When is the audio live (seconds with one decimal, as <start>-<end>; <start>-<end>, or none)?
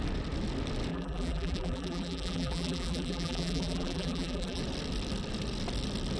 0.0-0.9; 4.6-6.2